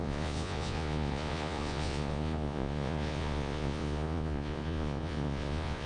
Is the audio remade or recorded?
remade